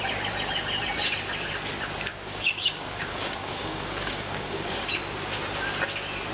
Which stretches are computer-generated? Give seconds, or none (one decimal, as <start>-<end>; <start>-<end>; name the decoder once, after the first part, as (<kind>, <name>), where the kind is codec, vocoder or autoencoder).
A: 2.1-4.9 (codec, DAC)